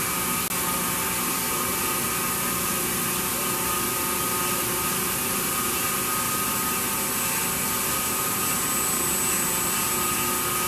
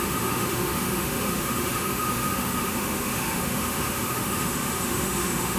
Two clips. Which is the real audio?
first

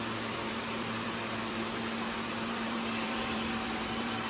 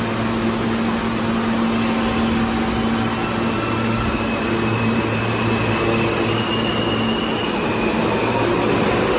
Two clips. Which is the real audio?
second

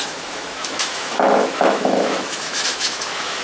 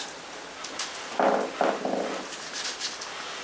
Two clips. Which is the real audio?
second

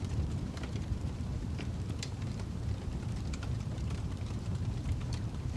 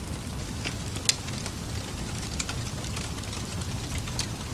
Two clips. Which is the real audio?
second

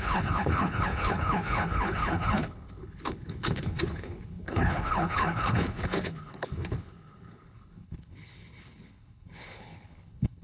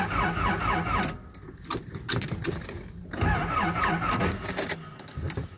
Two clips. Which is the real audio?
second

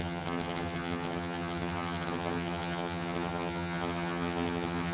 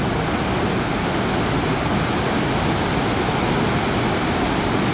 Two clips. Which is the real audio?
second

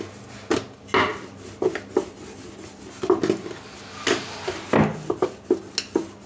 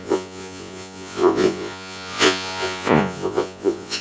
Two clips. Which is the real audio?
first